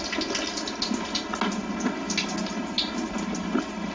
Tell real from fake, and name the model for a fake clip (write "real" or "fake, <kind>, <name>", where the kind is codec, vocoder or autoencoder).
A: real